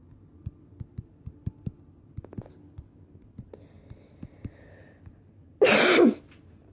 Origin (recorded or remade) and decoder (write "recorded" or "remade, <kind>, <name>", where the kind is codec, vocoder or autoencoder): recorded